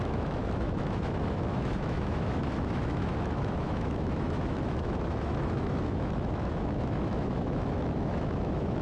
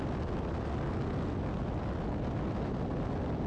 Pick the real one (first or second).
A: second